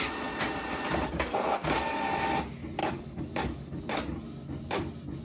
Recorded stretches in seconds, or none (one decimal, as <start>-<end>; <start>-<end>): 0.0-2.8; 3.8-5.2